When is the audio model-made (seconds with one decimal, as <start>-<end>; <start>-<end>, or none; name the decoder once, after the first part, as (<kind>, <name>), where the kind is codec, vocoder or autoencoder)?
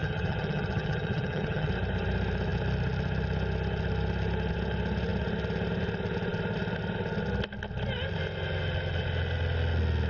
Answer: 0.0-1.7 (vocoder, HiFi-GAN)